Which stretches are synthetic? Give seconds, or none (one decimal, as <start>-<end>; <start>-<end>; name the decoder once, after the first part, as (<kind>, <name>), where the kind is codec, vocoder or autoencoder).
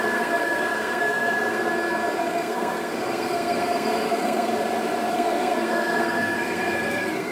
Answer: 0.0-1.7 (codec, SNAC); 2.2-4.5; 5.1-7.3